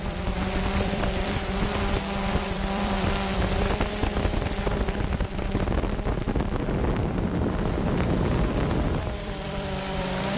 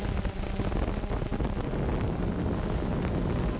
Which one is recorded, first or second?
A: second